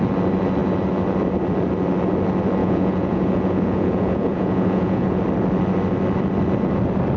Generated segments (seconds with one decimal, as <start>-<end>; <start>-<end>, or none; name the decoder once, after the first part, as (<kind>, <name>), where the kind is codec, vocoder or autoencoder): 2.6-5.2 (vocoder, Vocos)